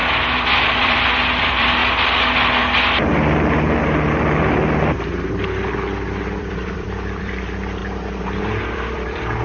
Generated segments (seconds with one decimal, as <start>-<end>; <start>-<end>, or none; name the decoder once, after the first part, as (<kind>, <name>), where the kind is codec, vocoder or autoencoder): 0.8-1.8 (vocoder, BigVGAN v2); 6.4-7.8; 8.6-9.4